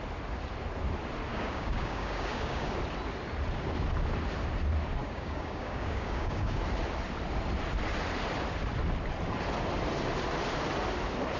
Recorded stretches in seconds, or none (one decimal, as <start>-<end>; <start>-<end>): 0.0-1.3; 2.7-5.0; 6.6-11.4